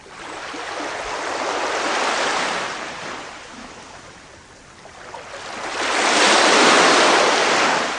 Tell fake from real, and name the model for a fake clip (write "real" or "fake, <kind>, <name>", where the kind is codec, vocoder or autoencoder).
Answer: real